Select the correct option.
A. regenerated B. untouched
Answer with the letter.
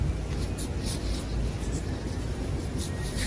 B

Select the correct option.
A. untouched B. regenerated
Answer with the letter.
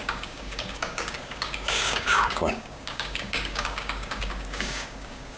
B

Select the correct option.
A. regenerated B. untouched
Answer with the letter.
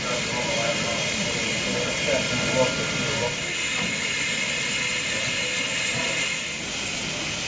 B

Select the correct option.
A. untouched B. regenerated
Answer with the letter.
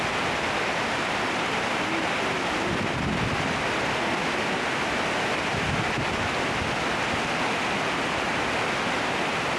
A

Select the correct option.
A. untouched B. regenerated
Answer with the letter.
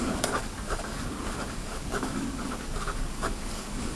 B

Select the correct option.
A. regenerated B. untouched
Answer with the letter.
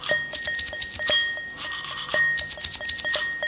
B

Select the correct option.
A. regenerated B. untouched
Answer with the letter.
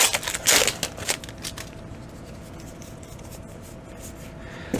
B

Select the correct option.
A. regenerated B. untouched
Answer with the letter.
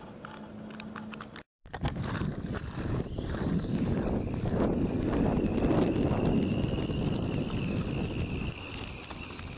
B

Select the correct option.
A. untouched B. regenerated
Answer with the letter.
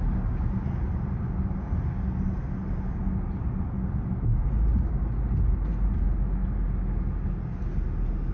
A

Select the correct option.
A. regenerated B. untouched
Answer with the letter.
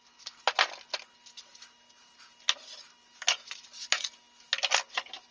B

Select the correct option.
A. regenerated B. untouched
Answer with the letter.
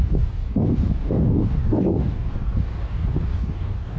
A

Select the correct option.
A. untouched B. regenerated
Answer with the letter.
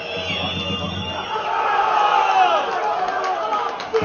A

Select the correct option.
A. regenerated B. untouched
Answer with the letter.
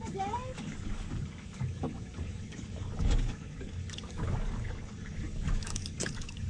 A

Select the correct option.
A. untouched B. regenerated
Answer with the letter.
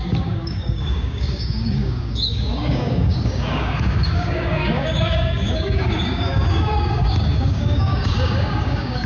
B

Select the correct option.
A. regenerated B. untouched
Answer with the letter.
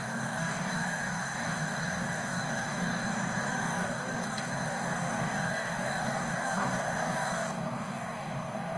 A